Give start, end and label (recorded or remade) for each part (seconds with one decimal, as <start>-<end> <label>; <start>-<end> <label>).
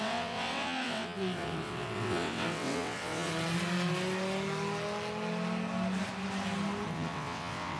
0.0-3.3 remade; 3.3-6.9 recorded; 6.9-7.8 remade